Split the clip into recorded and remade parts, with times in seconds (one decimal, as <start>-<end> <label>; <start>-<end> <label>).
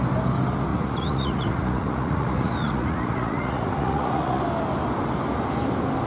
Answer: 0.0-0.7 recorded; 0.7-4.4 remade; 4.4-6.1 recorded